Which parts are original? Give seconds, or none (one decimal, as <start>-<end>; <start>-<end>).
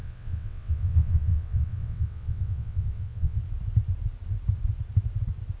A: 3.4-5.6